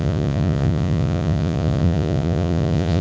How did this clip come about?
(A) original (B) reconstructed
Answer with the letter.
B